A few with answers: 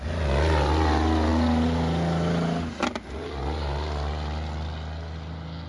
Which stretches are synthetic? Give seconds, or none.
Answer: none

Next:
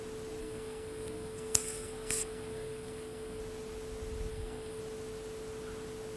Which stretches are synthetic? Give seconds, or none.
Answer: 0.4-3.4; 4.3-4.8

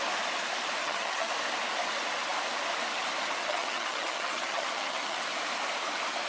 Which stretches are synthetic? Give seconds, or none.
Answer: 0.8-1.3; 3.4-5.2

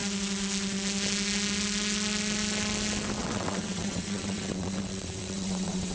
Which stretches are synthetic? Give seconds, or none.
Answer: 3.2-5.9

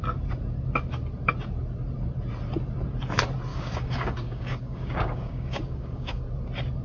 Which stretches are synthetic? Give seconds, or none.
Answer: 3.5-6.2

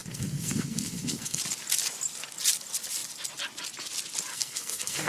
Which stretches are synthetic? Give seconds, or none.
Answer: 0.0-1.4; 4.3-5.1

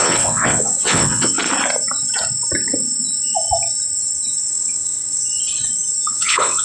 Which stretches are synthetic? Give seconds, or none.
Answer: 0.0-1.4; 4.5-5.2; 6.1-6.6

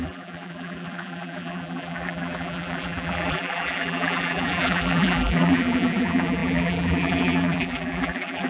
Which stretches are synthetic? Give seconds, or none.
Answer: 0.0-8.5